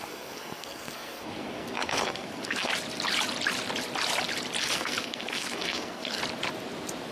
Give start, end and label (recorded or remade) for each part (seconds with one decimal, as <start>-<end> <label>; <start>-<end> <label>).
0.0-2.7 remade; 2.7-4.6 recorded; 4.6-6.2 remade; 6.2-7.1 recorded